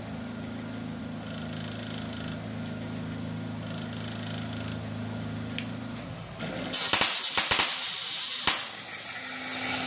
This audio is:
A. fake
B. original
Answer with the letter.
B